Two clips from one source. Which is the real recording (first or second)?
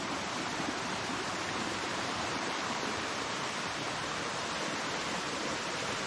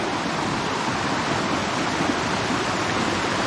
second